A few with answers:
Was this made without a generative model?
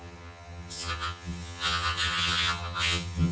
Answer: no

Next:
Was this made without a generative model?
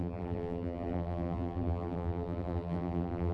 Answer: no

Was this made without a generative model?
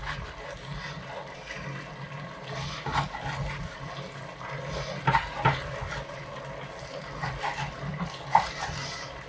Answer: yes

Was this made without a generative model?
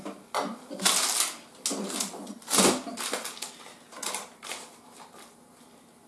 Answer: yes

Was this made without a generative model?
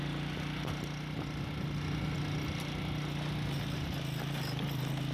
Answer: yes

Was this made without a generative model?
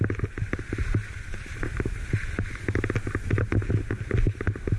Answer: yes